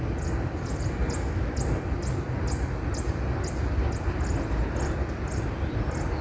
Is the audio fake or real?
real